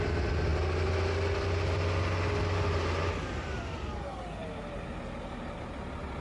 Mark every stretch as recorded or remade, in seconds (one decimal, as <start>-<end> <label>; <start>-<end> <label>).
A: 0.0-6.2 recorded

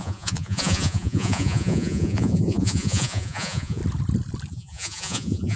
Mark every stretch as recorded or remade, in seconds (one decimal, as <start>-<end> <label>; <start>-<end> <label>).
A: 0.0-3.8 remade; 3.8-4.5 recorded; 4.5-5.6 remade

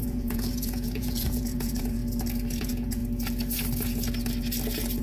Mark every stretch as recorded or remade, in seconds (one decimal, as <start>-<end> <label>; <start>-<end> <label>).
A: 0.0-2.0 remade; 2.0-2.6 recorded; 2.6-3.0 remade; 3.0-5.0 recorded

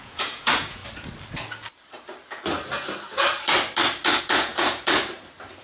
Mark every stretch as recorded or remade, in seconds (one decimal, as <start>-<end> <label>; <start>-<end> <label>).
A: 0.0-0.8 remade; 0.8-4.2 recorded; 4.2-5.0 remade; 5.0-5.6 recorded

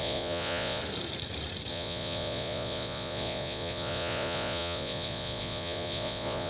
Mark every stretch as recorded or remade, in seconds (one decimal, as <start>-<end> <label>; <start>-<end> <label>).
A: 0.0-0.8 remade; 0.8-1.7 recorded; 1.7-6.5 remade

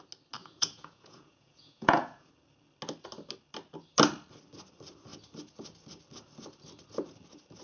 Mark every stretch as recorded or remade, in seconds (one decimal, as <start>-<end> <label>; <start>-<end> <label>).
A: 0.0-0.4 recorded; 0.4-2.3 remade; 2.3-7.6 recorded